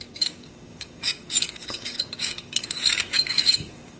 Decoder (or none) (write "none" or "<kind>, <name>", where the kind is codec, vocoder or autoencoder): codec, DAC